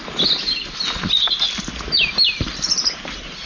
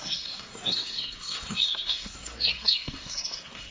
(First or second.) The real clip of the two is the first